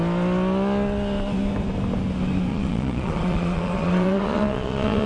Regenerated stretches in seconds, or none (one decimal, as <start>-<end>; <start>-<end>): 2.5-5.1